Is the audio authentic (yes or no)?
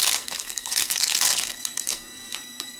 no